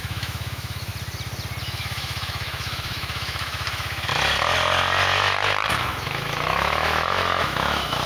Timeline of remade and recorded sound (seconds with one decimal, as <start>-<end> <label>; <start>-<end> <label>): 0.0-0.9 remade; 0.9-1.6 recorded; 1.6-4.1 remade; 4.1-5.7 recorded; 5.7-8.1 remade